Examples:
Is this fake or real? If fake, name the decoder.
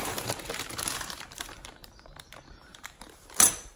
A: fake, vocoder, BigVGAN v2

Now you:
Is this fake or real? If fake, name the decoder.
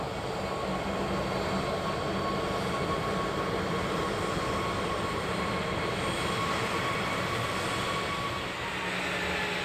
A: real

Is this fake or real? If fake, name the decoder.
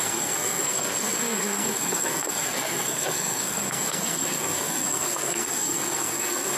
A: fake, codec, SNAC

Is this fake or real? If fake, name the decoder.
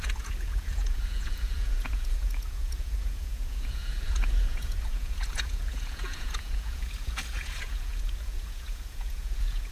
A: fake, vocoder, Vocos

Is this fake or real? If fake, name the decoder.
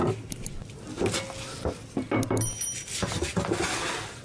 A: real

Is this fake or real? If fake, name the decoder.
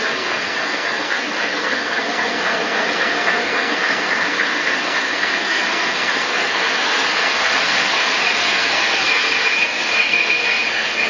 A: fake, codec, SNAC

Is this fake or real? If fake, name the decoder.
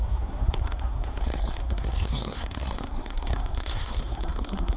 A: fake, codec, SNAC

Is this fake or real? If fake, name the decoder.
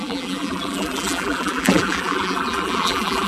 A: fake, vocoder, BigVGAN v2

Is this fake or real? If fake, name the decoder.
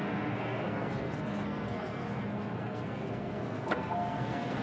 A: fake, codec, SNAC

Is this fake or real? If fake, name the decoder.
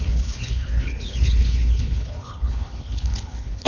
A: fake, codec, HILCodec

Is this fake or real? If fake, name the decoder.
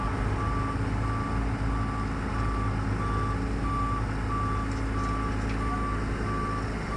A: real